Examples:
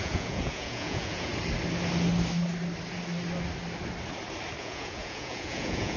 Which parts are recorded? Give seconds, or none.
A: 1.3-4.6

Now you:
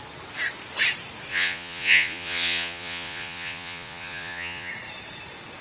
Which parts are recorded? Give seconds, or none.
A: 0.0-1.3; 4.7-5.6

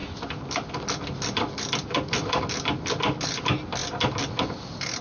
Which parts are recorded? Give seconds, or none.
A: 0.0-5.0

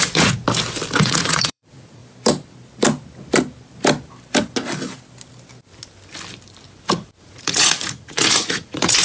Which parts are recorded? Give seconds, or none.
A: 0.4-1.0; 2.0-7.2

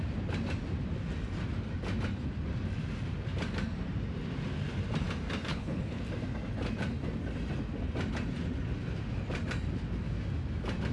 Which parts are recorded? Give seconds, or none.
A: 0.0-5.5; 6.0-10.9

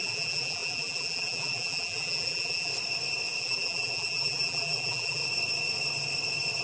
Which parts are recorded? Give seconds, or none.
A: 2.7-3.4; 5.2-6.6

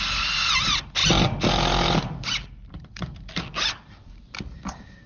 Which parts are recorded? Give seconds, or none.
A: 0.0-5.1

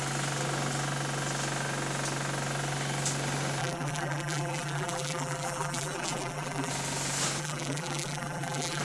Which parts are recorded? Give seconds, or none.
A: 0.0-3.6; 6.7-7.4